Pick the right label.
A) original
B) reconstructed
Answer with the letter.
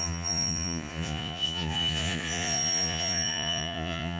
B